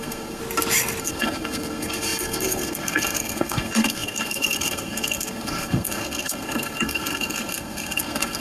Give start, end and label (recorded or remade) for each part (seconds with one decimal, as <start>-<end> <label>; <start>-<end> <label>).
0.0-0.4 remade; 0.4-1.0 recorded; 1.0-8.4 remade